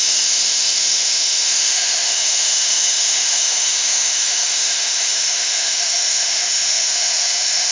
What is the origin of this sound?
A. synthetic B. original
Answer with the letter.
A